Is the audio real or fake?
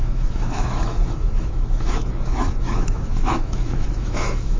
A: fake